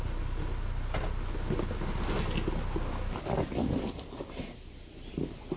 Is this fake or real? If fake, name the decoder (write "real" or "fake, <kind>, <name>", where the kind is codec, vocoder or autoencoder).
real